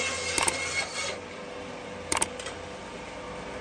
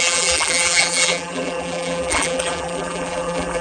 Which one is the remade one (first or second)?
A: second